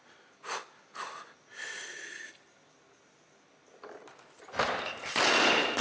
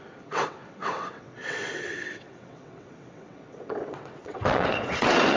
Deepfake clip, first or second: second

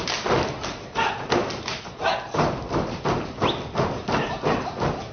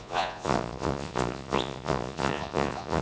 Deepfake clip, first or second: second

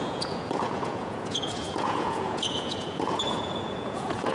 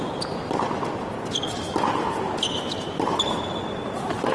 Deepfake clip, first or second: first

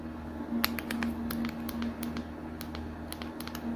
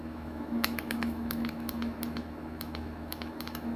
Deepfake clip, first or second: second